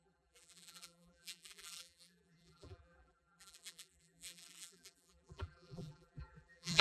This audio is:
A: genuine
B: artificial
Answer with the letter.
B